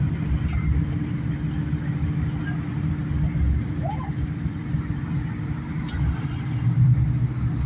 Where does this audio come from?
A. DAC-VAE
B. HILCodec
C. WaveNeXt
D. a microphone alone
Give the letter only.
D